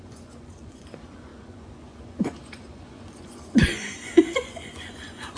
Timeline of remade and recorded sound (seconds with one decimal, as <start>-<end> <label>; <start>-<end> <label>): 0.0-5.4 remade